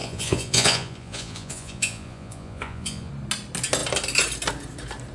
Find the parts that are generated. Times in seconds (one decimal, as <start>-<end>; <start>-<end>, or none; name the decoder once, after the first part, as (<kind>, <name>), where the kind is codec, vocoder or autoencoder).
0.0-3.1 (vocoder, Vocos)